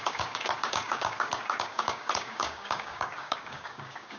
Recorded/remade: remade